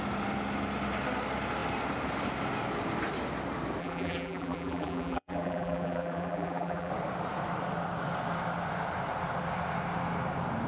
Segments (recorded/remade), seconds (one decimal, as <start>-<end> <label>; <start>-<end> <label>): 0.0-3.8 recorded; 3.8-6.9 remade; 6.9-10.7 recorded